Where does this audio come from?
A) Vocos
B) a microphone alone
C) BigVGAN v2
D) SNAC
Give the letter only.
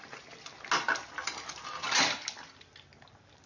B